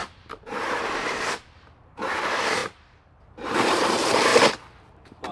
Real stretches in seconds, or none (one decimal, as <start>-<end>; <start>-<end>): 4.3-4.8